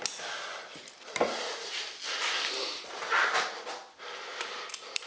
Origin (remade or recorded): recorded